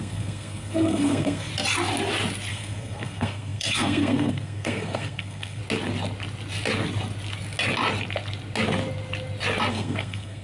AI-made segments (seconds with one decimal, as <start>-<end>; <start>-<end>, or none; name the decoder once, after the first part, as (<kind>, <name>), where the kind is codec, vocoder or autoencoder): 0.0-1.5 (codec, SNAC); 2.5-5.6; 9.7-10.4